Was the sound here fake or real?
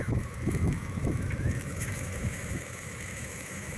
fake